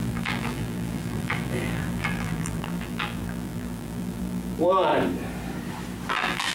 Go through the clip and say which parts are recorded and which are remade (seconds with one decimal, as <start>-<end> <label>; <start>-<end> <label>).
0.0-4.9 remade; 4.9-6.1 recorded; 6.1-6.5 remade